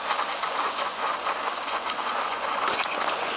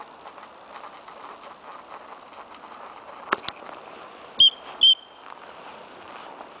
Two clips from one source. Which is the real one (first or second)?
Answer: second